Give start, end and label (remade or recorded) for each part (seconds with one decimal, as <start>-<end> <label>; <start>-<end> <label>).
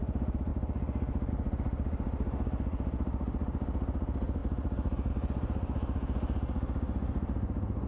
0.0-7.9 recorded